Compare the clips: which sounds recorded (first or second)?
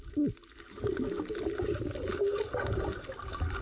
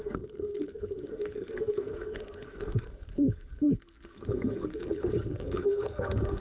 first